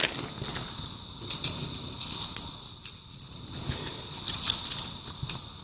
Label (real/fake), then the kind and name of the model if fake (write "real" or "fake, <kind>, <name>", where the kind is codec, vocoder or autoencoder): real